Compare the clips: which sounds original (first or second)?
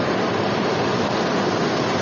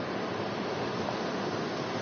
second